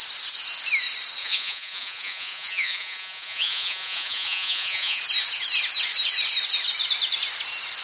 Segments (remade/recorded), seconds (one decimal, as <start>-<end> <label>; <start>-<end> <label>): 0.0-1.2 recorded; 1.2-5.0 remade; 5.0-7.8 recorded